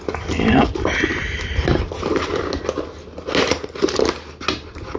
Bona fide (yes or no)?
yes